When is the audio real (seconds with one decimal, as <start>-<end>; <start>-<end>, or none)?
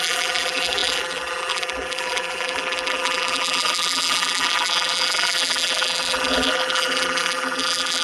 none